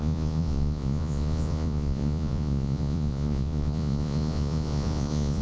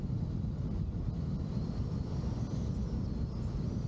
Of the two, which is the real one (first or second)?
second